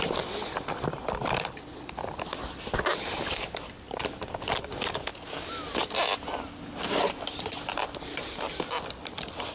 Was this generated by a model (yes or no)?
no